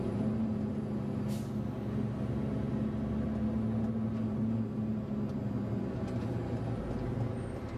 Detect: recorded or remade recorded